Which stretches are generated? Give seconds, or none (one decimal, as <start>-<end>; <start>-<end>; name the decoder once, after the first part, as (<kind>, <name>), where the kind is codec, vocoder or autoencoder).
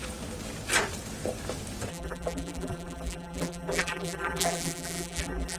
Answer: 1.9-5.6 (vocoder, BigVGAN v2)